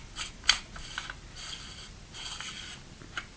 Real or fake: real